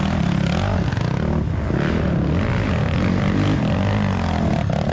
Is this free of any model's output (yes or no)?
yes